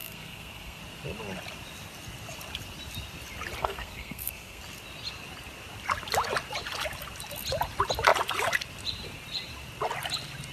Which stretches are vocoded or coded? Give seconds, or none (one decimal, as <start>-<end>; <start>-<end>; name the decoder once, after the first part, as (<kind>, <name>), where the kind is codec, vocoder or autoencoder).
0.0-0.8 (codec, SNAC); 3.6-4.6